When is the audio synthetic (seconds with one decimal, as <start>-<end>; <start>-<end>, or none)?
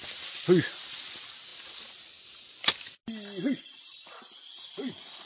none